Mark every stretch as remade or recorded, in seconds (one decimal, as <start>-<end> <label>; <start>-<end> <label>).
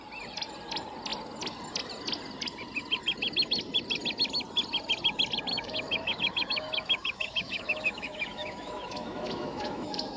0.0-5.5 recorded; 5.5-10.2 remade